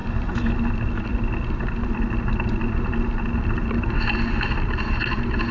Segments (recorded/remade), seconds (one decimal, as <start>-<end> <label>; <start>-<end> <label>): 0.0-5.5 recorded